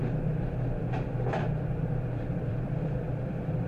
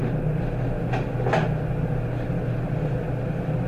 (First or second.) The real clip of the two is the second